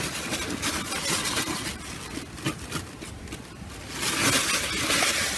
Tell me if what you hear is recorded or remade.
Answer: recorded